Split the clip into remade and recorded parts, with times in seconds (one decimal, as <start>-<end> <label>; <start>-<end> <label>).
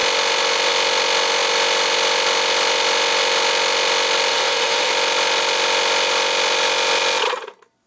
0.0-4.3 recorded; 4.3-4.9 remade; 4.9-7.9 recorded